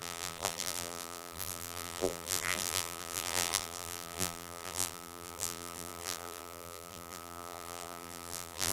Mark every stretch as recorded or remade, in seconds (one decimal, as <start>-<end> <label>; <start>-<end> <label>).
0.0-8.7 remade